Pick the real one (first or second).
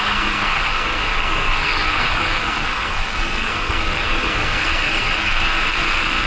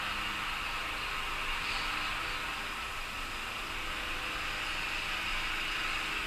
second